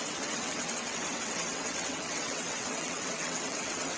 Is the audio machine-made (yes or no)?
yes